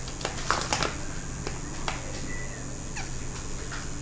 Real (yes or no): yes